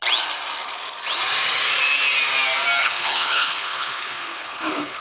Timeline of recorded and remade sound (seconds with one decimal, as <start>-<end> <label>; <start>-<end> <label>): 0.0-2.8 recorded; 2.8-5.0 remade